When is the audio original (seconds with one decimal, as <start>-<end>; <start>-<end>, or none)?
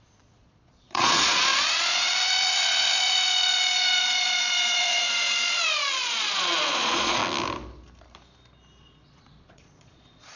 7.2-8.8